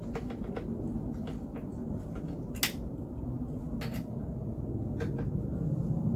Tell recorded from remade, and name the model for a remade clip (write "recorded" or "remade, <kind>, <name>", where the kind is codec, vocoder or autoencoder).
recorded